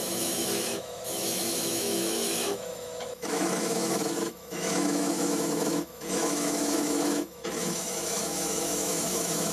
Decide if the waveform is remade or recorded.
remade